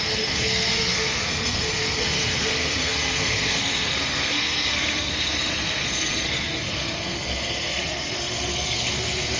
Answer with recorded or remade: remade